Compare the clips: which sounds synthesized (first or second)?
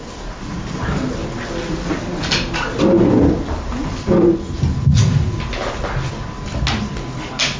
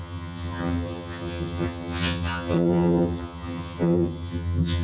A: second